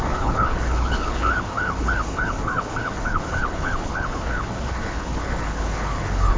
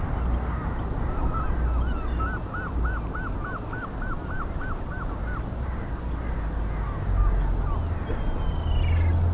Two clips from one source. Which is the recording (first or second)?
second